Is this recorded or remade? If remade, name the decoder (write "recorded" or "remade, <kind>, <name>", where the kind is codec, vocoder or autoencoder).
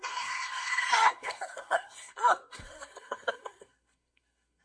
remade, codec, SNAC